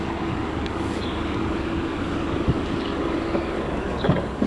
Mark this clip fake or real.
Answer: fake